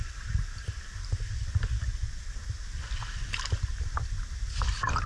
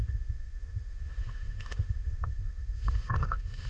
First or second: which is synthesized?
second